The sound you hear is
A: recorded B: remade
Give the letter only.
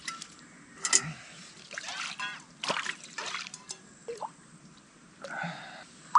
A